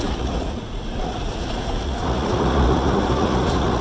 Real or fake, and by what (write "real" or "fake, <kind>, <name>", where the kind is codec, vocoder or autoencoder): fake, vocoder, Vocos